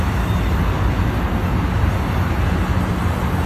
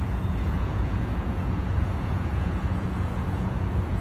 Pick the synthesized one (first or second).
second